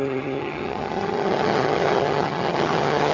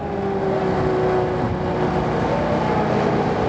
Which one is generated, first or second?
first